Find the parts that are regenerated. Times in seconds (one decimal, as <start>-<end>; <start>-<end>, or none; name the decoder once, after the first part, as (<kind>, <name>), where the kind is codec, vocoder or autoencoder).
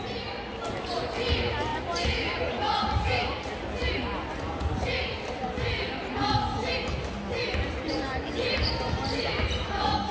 none